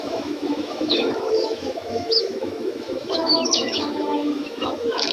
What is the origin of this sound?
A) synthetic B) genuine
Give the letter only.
A